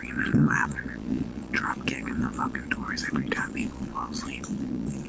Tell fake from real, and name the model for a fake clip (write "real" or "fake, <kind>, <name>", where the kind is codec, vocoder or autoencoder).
fake, vocoder, Vocos